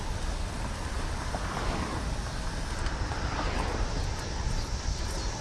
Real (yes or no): yes